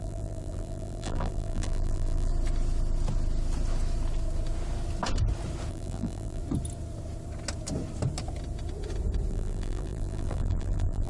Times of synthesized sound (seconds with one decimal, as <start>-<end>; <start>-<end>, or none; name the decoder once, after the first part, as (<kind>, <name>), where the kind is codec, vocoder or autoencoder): 0.0-2.3 (vocoder, BigVGAN v2); 5.7-6.4; 9.3-11.1